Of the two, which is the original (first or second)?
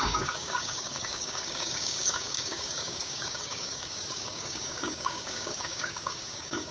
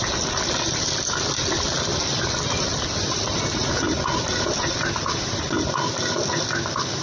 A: second